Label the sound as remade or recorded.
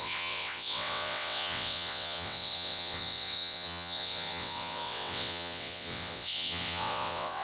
remade